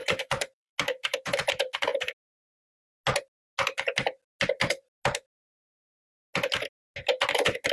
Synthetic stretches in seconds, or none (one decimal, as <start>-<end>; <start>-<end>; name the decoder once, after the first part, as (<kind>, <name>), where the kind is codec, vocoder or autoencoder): 0.0-0.7 (vocoder, BigVGAN v2)

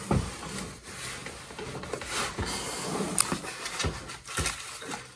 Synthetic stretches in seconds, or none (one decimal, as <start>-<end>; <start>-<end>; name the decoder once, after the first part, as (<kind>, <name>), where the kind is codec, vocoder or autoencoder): none